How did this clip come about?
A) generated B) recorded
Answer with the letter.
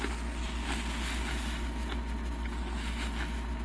B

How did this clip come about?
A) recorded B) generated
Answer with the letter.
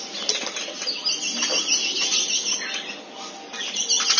A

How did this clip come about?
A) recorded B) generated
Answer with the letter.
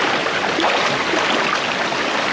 A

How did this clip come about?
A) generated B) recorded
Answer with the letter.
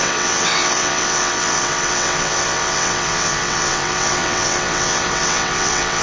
A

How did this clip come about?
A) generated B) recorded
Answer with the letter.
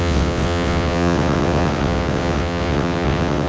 A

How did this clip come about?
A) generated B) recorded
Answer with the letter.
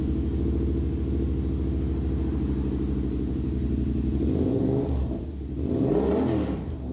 B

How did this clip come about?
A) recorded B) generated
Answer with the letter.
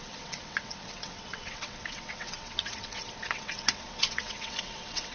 B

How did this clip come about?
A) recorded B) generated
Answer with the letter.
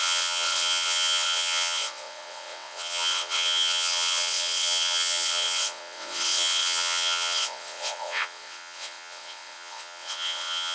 B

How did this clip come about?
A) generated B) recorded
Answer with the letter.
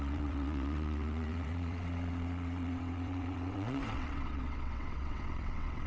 A